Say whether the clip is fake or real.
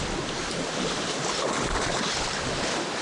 real